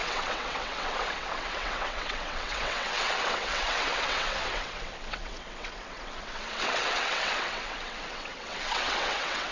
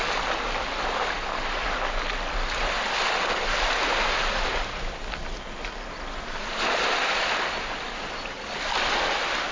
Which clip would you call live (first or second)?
second